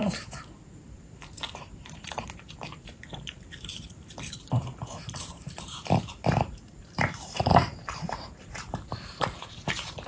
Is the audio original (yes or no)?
no